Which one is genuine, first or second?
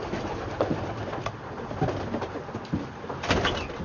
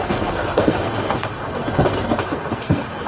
first